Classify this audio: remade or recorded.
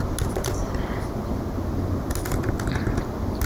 recorded